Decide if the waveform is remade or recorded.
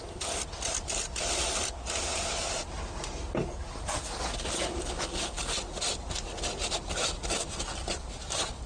recorded